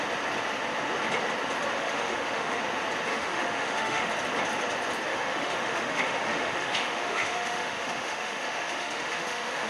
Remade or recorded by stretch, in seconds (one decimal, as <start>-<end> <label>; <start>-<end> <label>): 0.0-1.8 recorded; 1.8-2.6 remade; 2.6-3.1 recorded; 3.1-4.1 remade; 4.1-5.1 recorded; 5.1-9.7 remade